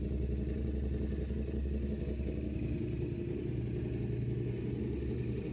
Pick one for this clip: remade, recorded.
recorded